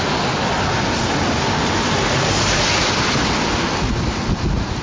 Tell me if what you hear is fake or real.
real